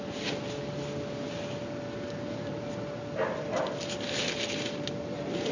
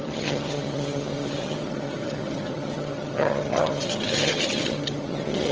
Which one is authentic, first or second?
first